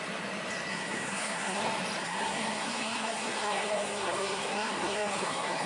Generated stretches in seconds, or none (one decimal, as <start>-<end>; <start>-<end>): 0.7-1.6; 2.0-5.7

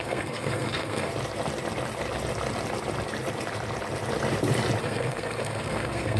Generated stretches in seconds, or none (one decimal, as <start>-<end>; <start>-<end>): 0.0-1.1; 4.8-6.2

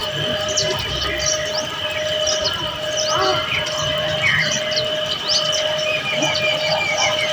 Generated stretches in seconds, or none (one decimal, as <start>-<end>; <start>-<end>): none

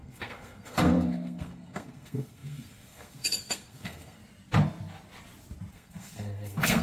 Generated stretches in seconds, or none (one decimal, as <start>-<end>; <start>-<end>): 0.0-4.2; 5.7-6.8

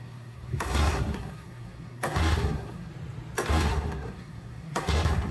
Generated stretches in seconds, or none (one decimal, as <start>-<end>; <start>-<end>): 0.0-2.9; 3.5-5.3

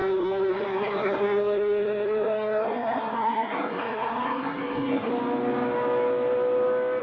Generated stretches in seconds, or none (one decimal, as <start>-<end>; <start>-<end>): 0.0-5.1

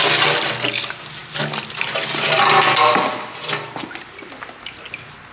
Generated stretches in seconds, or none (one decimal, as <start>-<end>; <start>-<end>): none